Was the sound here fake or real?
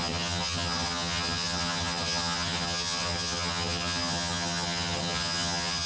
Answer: fake